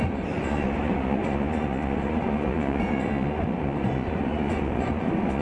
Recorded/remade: remade